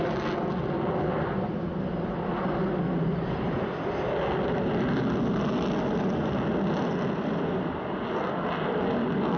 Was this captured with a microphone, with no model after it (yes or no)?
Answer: yes